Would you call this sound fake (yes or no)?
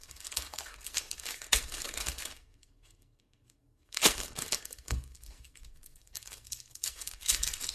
yes